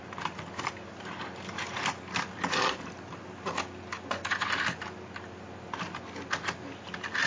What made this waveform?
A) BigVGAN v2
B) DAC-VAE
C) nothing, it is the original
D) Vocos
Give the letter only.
C